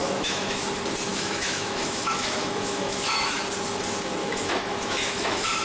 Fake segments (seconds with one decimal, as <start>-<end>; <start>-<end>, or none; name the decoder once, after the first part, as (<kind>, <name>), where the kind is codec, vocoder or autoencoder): 0.0-0.6 (autoencoder, DAC-VAE); 1.1-3.4; 4.2-5.6